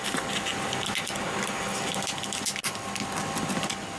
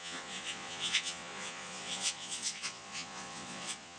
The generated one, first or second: second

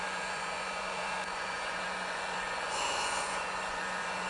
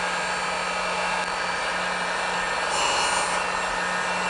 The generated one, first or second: first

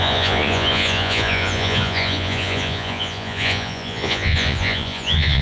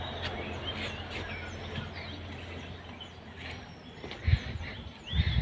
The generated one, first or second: first